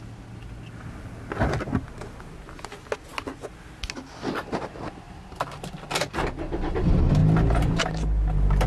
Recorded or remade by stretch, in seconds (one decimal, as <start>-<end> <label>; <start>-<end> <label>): 0.0-8.7 recorded